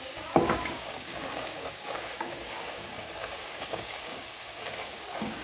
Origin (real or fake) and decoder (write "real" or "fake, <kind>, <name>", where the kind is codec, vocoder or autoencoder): fake, codec, DAC